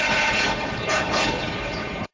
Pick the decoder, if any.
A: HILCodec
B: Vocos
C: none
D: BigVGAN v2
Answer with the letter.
A